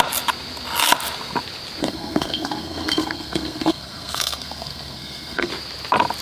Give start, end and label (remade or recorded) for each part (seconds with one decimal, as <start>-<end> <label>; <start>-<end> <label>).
0.0-1.8 recorded; 1.8-5.5 remade; 5.5-6.2 recorded